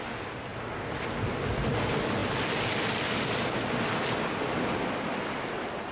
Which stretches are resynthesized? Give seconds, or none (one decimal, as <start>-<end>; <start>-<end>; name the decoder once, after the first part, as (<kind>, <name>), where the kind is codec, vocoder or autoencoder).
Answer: none